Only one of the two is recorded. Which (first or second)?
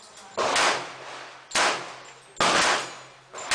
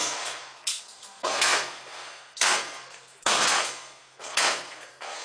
first